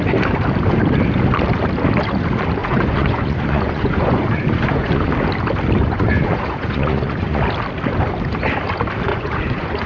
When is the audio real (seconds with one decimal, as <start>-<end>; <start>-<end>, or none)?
0.0-2.6; 5.1-5.8; 7.4-9.1